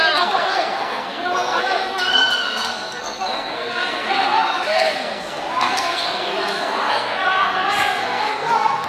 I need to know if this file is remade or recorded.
remade